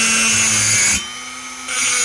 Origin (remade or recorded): recorded